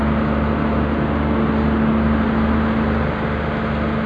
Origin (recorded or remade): recorded